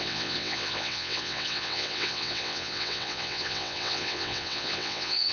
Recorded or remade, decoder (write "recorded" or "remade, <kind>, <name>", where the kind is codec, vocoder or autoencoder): remade, vocoder, WaveNeXt